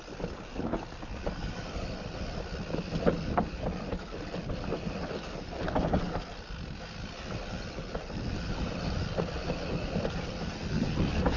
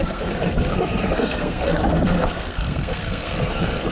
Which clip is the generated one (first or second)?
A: second